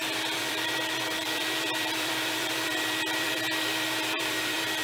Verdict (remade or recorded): remade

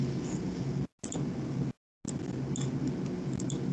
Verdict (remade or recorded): recorded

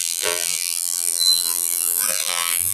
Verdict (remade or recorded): remade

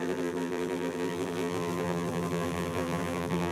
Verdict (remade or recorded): remade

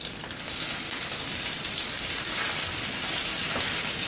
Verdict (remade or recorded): recorded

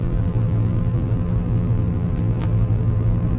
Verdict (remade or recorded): remade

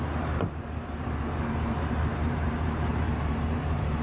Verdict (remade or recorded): remade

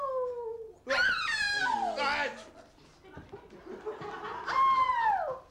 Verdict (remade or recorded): recorded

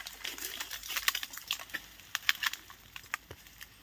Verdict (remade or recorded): recorded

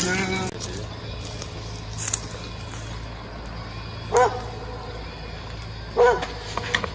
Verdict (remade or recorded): recorded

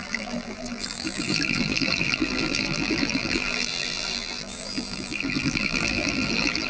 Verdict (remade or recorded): remade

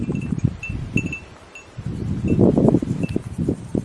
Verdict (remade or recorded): remade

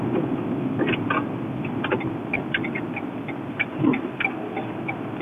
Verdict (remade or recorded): recorded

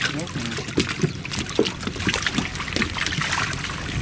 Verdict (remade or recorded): recorded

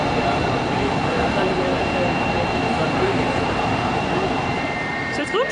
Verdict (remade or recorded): remade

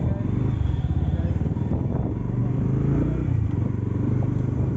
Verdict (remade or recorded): recorded